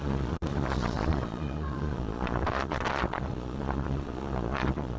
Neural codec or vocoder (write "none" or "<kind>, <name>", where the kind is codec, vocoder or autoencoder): vocoder, Vocos